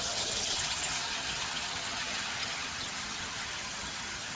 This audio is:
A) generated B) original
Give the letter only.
A